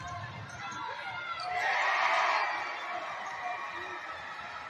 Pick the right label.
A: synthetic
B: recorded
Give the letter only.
B